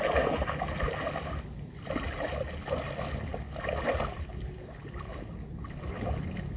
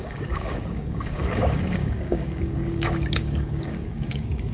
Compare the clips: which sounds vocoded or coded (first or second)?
second